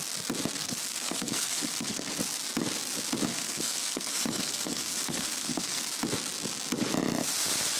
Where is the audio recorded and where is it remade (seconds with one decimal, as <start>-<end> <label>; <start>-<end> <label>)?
0.0-0.6 recorded; 0.6-2.0 remade; 2.0-3.3 recorded; 3.3-5.8 remade; 5.8-7.8 recorded